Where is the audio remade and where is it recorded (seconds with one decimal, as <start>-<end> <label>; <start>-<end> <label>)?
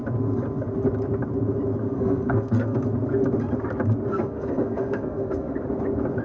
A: 0.0-1.8 recorded; 1.8-2.8 remade; 2.8-4.1 recorded; 4.1-5.5 remade; 5.5-6.2 recorded